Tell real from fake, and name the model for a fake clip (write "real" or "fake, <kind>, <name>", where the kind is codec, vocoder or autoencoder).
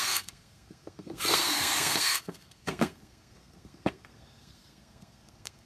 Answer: fake, codec, SNAC